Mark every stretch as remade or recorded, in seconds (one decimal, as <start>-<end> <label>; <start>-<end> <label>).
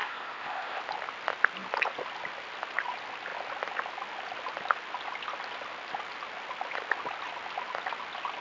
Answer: 0.0-0.8 remade; 0.8-8.4 recorded